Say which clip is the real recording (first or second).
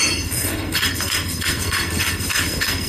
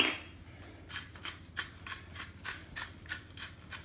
second